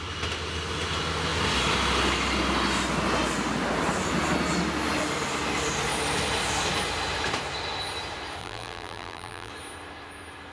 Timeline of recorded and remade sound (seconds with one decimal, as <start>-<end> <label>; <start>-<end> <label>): 0.0-8.4 recorded; 8.4-9.5 remade; 9.5-10.5 recorded